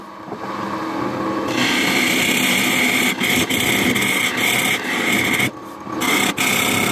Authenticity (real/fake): real